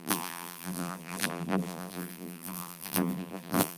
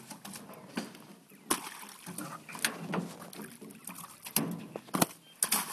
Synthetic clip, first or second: first